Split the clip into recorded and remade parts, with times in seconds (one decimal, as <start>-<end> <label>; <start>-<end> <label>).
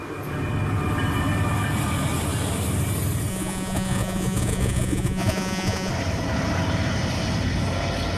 0.0-3.3 recorded; 3.3-5.9 remade; 5.9-8.2 recorded